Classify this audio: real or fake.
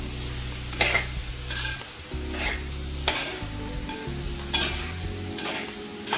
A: real